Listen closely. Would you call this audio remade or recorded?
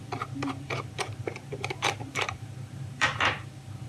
remade